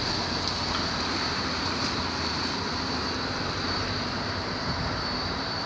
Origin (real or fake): fake